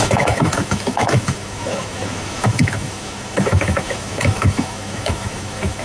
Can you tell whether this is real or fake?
fake